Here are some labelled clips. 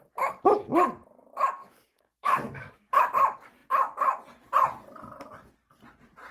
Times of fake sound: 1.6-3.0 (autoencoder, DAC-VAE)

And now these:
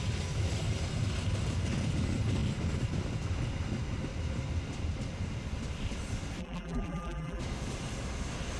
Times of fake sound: 6.4-7.4 (vocoder, BigVGAN v2)

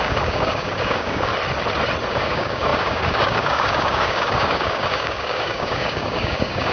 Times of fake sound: 0.0-1.3 (codec, DAC); 2.1-6.7

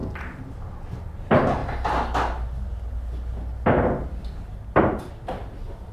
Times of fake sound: none